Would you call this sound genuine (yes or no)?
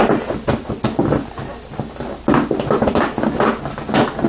yes